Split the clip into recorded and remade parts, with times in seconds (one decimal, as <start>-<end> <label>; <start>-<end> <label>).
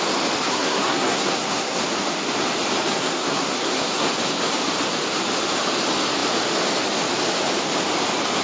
0.0-0.4 recorded; 0.4-1.8 remade; 1.8-2.9 recorded; 2.9-4.1 remade; 4.1-8.4 recorded